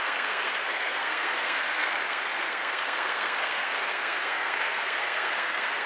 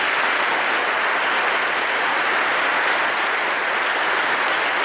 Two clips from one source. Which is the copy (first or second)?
first